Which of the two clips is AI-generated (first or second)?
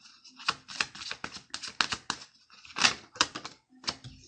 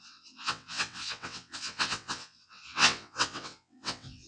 second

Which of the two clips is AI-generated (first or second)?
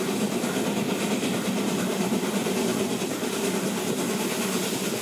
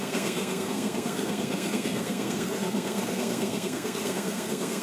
second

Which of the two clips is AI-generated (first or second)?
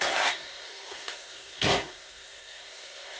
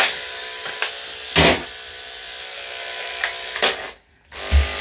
first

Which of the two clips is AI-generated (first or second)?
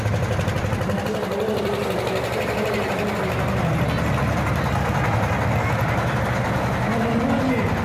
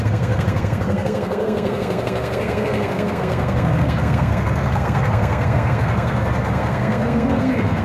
second